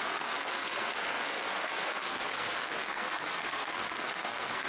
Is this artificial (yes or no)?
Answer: yes